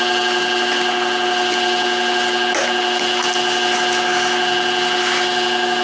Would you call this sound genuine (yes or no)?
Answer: yes